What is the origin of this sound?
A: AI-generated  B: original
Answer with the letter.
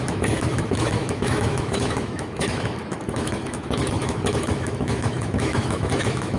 A